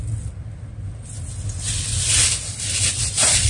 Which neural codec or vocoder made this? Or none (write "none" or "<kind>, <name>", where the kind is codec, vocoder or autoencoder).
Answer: none